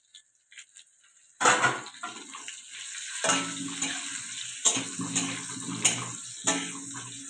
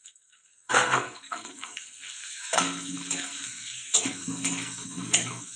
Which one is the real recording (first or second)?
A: first